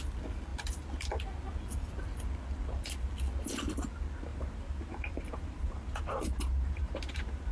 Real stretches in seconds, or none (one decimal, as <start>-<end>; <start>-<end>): 0.0-4.3

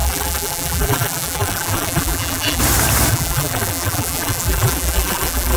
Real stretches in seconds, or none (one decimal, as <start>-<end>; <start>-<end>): 2.6-3.1